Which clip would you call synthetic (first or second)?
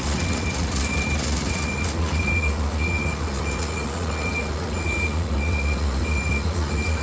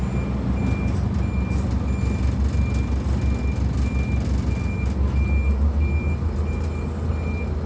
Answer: first